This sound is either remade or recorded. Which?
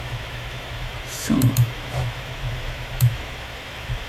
remade